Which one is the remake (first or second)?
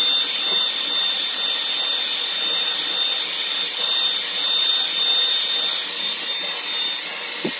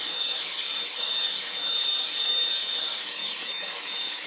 second